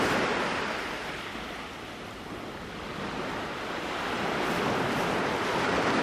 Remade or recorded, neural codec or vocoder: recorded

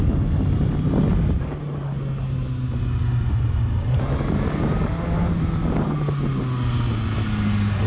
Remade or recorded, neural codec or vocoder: recorded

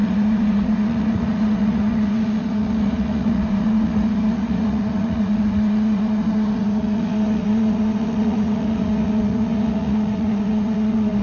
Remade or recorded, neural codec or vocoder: remade, vocoder, Vocos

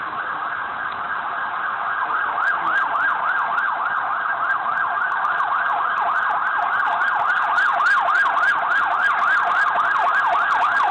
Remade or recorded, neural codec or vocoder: recorded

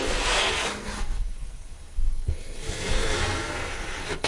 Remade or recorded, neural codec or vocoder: remade, codec, SNAC